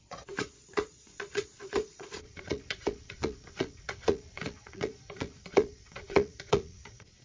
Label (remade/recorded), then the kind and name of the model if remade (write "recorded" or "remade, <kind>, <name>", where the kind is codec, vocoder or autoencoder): remade, vocoder, Vocos